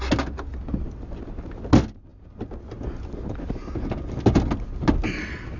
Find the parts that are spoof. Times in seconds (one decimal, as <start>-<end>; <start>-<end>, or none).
none